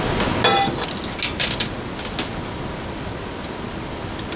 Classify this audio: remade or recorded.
recorded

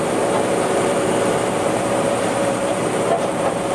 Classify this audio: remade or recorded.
remade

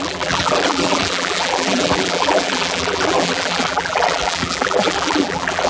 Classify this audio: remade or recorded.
remade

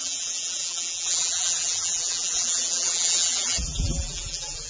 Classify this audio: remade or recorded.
remade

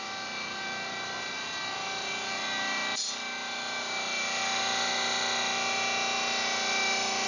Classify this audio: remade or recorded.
recorded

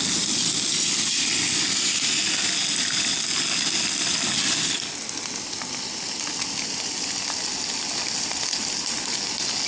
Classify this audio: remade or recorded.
recorded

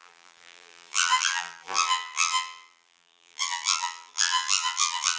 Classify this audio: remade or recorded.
remade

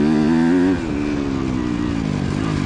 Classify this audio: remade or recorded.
recorded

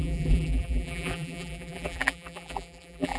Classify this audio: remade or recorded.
remade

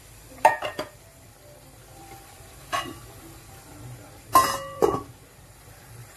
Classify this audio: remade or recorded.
remade